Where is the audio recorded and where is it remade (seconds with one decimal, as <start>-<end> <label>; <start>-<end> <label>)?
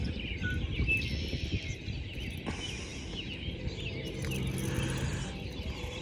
0.0-6.0 recorded